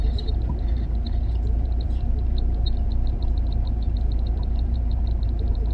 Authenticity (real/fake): fake